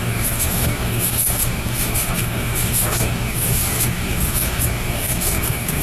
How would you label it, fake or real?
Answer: fake